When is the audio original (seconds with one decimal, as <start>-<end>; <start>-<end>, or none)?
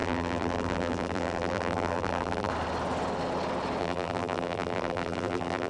2.5-3.8